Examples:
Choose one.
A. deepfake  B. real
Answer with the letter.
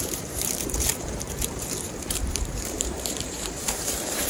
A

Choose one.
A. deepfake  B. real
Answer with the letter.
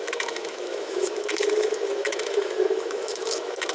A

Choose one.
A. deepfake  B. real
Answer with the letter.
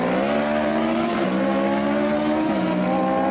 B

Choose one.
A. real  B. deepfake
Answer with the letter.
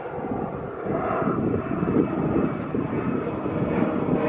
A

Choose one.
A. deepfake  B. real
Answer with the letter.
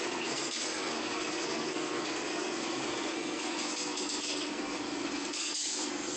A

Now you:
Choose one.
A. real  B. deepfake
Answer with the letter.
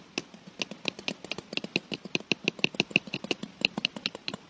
A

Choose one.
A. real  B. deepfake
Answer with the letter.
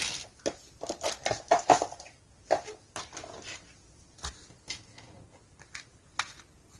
A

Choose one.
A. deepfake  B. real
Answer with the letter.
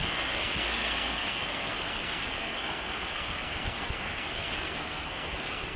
A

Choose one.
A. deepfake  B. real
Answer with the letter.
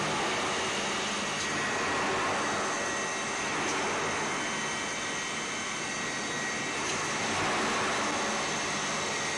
B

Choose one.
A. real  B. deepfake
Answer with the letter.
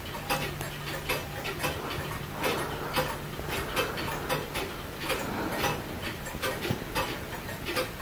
A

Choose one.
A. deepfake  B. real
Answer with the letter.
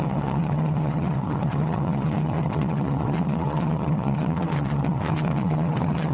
A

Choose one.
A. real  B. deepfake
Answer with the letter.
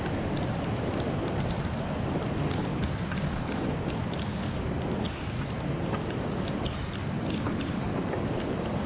A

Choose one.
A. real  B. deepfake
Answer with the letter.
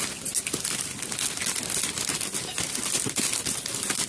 A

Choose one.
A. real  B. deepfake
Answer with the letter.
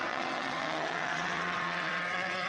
B